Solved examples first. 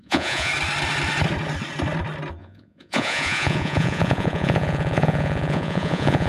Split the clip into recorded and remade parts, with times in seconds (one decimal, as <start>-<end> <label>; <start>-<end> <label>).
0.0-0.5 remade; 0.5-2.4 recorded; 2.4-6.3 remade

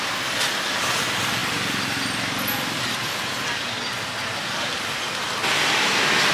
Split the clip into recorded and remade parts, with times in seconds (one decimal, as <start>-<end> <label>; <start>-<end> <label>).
0.0-6.3 recorded

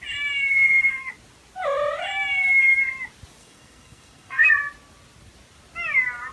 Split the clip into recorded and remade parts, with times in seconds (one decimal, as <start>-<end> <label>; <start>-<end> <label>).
0.0-0.5 recorded; 0.5-1.1 remade; 1.1-3.4 recorded; 3.4-4.5 remade; 4.5-6.3 recorded